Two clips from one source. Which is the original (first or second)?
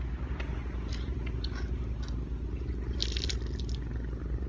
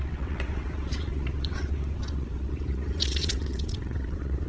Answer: first